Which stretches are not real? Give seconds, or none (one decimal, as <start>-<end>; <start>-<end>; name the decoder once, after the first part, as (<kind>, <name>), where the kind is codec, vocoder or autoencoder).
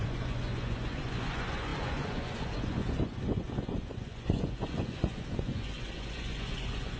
0.0-7.0 (vocoder, Vocos)